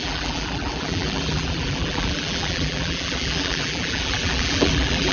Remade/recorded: remade